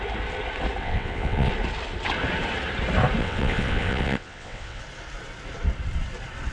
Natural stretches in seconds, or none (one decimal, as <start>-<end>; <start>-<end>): 0.0-0.8; 1.5-3.2; 4.8-6.5